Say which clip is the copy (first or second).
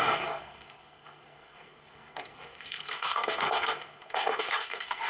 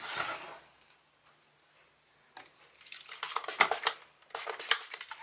first